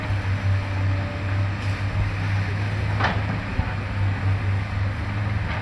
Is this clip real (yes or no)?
yes